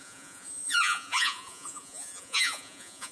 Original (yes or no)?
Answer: no